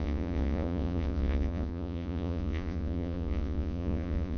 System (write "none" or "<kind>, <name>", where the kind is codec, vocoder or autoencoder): vocoder, Vocos